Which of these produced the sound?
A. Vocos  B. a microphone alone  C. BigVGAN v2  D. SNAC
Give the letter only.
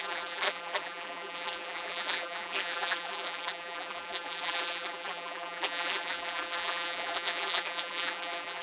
C